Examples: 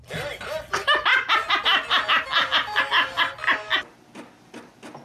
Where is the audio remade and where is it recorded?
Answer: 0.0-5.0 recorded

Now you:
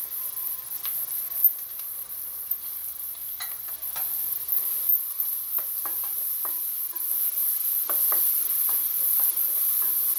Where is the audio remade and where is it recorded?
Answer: 0.0-10.2 recorded

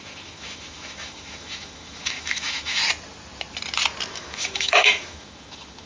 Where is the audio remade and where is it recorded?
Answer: 0.0-2.8 remade; 2.8-4.1 recorded; 4.1-5.9 remade

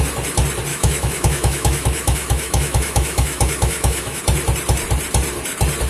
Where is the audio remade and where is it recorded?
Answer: 0.0-0.7 recorded; 0.7-4.2 remade; 4.2-5.9 recorded